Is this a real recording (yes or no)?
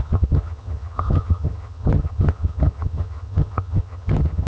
no